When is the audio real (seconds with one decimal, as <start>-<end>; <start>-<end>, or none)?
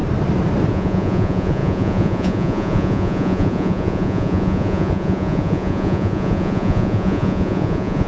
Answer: 0.0-0.7